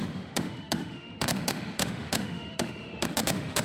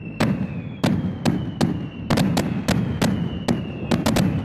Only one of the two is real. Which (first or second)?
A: second